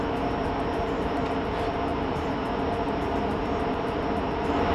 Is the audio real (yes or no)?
no